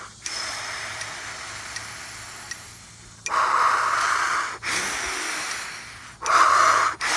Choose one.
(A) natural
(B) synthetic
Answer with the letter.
A